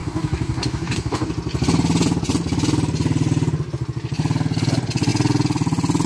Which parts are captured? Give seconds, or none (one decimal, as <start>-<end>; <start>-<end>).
1.3-6.1

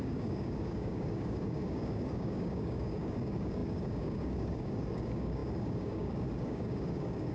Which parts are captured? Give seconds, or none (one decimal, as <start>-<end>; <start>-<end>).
none

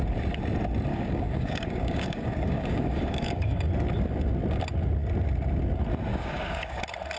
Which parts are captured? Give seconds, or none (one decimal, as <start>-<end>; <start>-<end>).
0.0-0.9; 3.7-6.1; 6.8-7.2

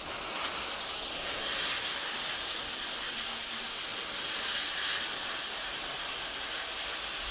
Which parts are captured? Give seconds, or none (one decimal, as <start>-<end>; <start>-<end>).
0.0-1.9; 2.6-7.3

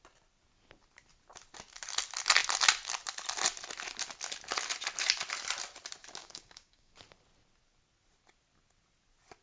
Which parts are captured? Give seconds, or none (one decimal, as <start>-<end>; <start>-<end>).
0.0-6.2; 6.9-9.4

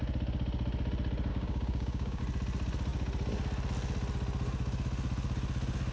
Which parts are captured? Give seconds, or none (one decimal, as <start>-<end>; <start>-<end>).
0.0-1.3; 2.2-5.9

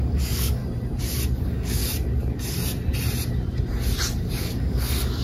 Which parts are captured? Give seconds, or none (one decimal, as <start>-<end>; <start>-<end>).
0.6-1.4; 1.8-4.2

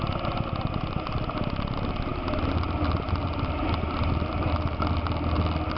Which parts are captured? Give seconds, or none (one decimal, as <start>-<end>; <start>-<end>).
0.0-5.8